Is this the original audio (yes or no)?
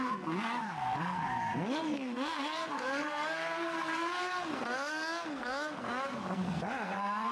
no